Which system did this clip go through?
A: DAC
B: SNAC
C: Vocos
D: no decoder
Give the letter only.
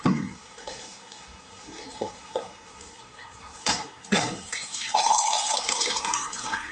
B